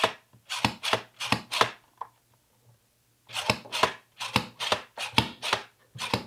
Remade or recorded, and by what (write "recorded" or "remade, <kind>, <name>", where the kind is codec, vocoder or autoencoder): recorded